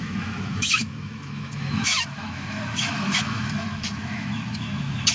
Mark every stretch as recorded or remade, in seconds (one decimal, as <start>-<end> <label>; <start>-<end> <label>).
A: 0.0-5.1 remade